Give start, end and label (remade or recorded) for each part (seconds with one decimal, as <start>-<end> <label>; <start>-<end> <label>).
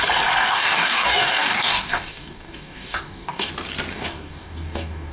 0.0-0.4 recorded; 0.4-3.5 remade; 3.5-3.9 recorded; 3.9-5.1 remade